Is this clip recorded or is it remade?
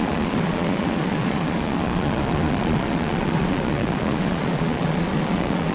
remade